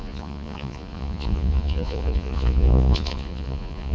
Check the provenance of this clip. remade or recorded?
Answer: remade